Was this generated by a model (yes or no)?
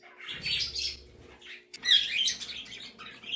no